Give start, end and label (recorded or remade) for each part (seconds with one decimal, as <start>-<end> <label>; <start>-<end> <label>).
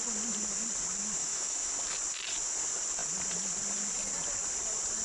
0.0-1.2 recorded; 1.2-1.7 remade; 1.7-5.0 recorded